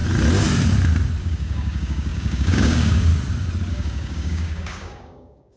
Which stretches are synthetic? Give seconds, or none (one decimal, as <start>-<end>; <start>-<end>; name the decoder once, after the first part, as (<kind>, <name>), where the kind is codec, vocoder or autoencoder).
1.2-3.1 (codec, DAC); 3.7-5.6